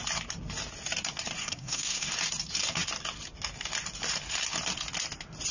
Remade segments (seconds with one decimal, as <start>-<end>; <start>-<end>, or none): 1.4-2.1